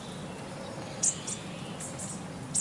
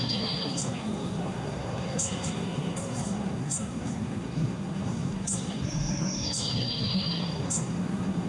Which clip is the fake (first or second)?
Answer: second